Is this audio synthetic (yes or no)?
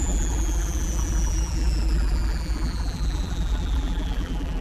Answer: yes